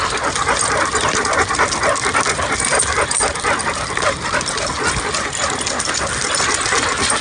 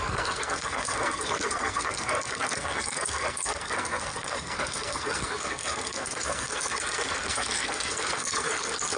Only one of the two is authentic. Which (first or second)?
first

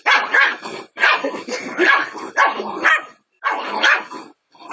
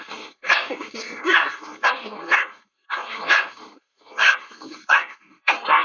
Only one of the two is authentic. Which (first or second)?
first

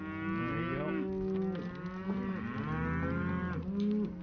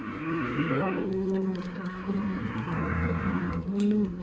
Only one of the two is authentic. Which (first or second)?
first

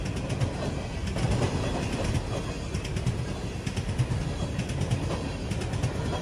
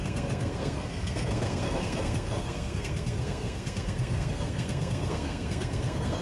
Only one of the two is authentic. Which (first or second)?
first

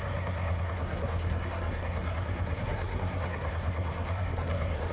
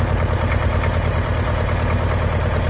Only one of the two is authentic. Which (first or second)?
second